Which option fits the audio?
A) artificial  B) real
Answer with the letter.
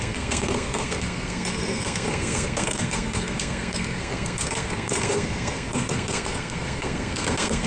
A